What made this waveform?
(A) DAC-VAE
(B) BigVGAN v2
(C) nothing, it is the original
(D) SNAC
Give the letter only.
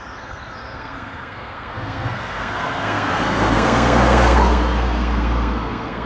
D